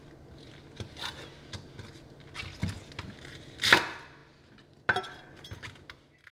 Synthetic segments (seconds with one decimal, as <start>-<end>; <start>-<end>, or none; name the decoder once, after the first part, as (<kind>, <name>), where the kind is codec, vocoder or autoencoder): none